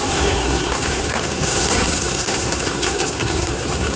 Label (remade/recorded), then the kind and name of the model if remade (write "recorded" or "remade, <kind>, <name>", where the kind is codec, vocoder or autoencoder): remade, codec, SNAC